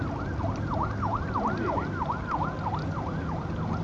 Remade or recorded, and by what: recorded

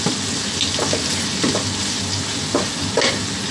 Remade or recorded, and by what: recorded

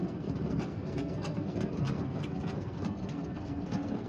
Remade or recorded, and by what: remade, codec, SNAC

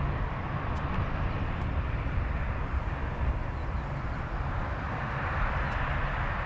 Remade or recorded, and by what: recorded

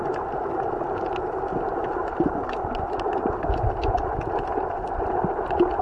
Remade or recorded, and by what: recorded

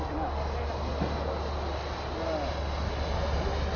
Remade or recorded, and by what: recorded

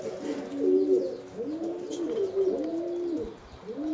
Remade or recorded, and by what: recorded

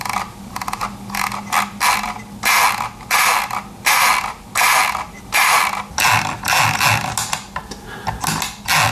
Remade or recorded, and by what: recorded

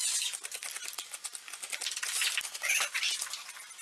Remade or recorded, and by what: recorded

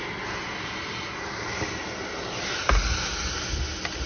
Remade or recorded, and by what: recorded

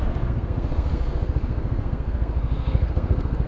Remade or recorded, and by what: remade, codec, SNAC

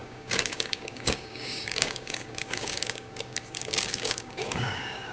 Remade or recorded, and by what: remade, codec, DAC